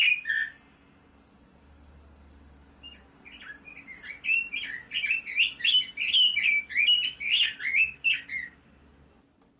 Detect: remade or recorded recorded